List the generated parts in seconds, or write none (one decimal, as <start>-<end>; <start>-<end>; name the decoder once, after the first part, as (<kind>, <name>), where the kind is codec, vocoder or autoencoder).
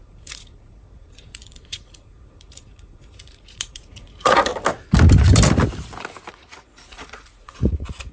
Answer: 0.0-4.5 (vocoder, Vocos); 6.3-8.1